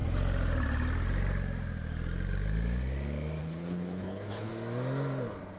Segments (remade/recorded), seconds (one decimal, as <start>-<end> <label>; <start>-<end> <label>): 0.0-3.4 recorded; 3.4-4.5 remade; 4.5-5.6 recorded